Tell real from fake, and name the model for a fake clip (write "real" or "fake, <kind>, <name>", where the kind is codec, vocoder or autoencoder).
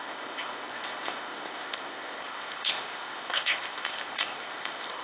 fake, codec, ZipCodec